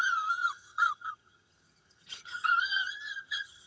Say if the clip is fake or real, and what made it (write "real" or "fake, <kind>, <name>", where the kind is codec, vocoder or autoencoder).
fake, vocoder, HiFi-GAN